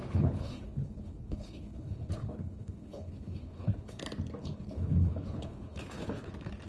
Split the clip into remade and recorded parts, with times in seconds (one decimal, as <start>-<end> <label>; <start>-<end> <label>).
0.0-4.0 remade; 4.0-4.4 recorded; 4.4-6.3 remade; 6.3-6.7 recorded